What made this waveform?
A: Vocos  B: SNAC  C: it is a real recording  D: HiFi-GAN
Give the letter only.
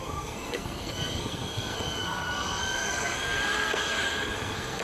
B